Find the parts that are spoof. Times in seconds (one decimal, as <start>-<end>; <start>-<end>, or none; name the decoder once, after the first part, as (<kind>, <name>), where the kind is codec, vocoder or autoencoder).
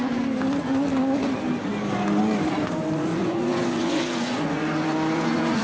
3.1-5.6 (vocoder, Vocos)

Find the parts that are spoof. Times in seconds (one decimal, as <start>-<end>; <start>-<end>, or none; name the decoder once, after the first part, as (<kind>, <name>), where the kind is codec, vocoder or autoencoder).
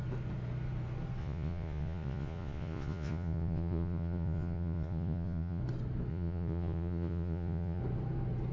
1.2-5.6 (vocoder, Vocos); 6.1-7.8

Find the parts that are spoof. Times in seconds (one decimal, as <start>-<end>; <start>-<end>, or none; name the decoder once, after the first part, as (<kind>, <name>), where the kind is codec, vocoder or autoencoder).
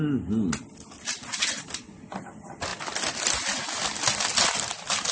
none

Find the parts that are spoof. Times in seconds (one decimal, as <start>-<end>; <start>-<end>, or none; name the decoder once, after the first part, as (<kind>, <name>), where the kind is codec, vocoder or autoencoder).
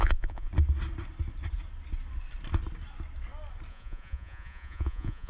0.0-0.5 (vocoder, Vocos); 3.7-5.3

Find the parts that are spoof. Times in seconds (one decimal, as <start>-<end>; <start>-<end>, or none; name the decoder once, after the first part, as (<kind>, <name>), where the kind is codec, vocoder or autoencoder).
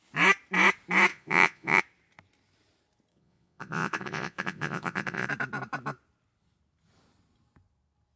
1.1-1.8 (vocoder, Vocos); 3.1-5.3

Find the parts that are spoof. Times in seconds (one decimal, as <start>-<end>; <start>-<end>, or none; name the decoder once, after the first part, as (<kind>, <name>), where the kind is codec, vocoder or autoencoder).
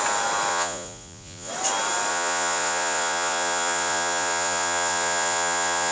0.5-1.5 (vocoder, Vocos); 2.1-5.9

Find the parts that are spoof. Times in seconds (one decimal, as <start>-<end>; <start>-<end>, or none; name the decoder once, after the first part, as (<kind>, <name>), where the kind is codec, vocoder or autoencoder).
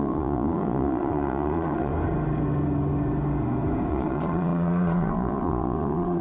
0.0-1.9 (vocoder, Vocos); 3.9-6.2